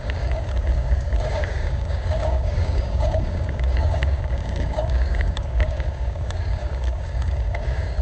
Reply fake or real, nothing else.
fake